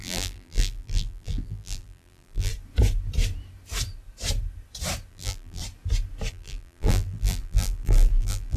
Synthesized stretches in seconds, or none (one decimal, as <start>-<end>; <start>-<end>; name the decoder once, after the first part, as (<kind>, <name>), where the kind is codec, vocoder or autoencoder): 0.0-2.5 (vocoder, BigVGAN v2); 5.1-5.6; 6.3-8.6